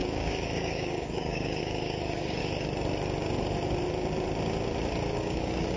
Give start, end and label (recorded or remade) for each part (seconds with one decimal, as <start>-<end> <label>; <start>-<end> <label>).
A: 0.0-2.4 remade; 2.4-5.1 recorded; 5.1-5.8 remade